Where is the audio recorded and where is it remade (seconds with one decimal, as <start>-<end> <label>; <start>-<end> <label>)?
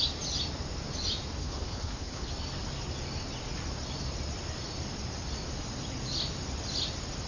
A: 0.0-1.4 recorded; 1.4-2.3 remade; 2.3-7.3 recorded